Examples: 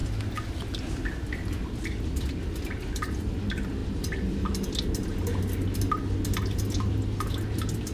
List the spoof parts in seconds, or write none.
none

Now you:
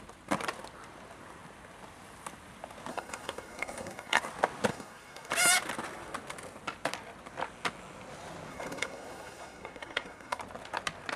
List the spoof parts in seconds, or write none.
2.9-4.2; 4.7-5.3; 8.5-10.4

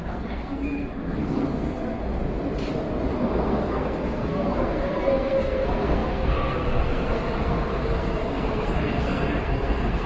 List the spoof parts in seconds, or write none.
0.0-2.2; 3.1-10.1

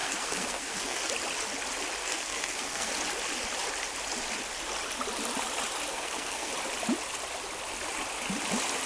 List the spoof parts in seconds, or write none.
0.0-1.1; 2.0-2.9; 5.9-6.5

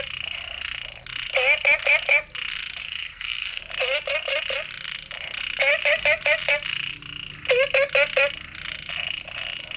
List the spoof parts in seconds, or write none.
2.8-3.6